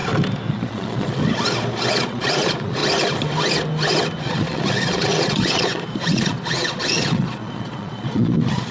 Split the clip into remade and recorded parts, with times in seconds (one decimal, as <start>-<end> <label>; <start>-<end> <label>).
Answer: 0.0-0.5 recorded; 0.5-1.2 remade; 1.2-1.9 recorded; 1.9-2.8 remade; 2.8-4.2 recorded; 4.2-8.7 remade